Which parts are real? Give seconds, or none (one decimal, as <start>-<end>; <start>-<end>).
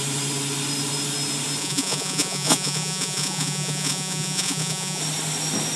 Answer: 0.0-1.6; 5.0-5.8